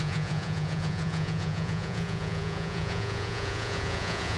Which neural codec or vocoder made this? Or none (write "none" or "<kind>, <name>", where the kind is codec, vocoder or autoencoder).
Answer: vocoder, Vocos